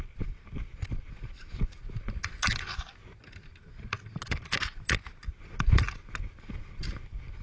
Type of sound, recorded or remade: recorded